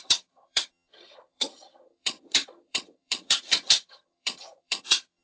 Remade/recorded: remade